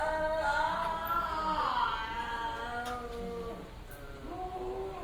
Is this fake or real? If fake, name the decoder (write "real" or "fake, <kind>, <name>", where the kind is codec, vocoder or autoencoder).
real